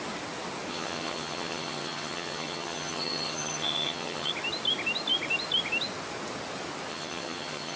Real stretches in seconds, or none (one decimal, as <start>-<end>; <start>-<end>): 0.0-0.7; 4.3-6.9